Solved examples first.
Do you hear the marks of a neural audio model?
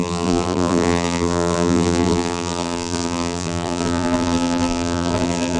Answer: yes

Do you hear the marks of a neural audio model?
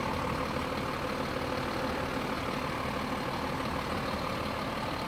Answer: no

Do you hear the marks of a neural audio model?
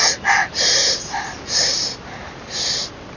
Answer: no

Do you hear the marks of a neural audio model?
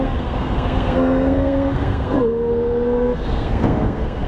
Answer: yes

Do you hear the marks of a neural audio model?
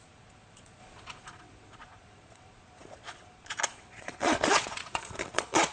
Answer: yes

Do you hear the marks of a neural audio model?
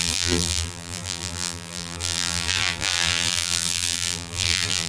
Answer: yes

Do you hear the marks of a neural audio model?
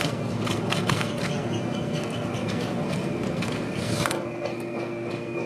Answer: yes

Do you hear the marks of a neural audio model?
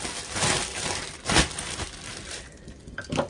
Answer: no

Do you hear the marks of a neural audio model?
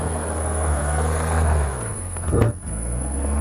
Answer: yes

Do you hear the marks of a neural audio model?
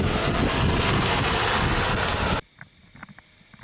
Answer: no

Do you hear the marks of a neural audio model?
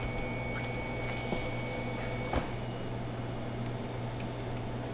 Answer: no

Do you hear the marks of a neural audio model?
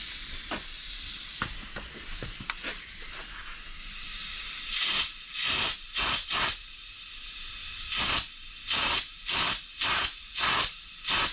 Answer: no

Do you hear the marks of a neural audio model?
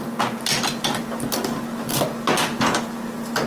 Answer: no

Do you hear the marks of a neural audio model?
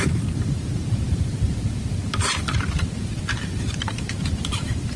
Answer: yes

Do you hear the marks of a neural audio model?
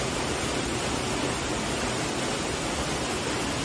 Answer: no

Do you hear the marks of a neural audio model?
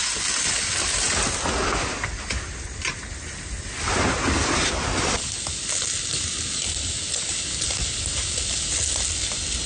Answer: no